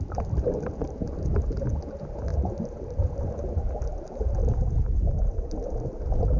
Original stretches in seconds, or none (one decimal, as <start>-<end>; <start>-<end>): 0.0-0.8; 1.7-2.3; 3.3-4.4; 5.5-6.4